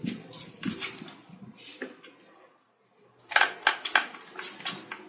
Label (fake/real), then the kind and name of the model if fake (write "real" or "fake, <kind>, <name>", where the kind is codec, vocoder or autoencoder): fake, vocoder, BigVGAN v2